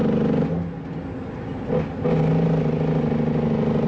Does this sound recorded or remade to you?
recorded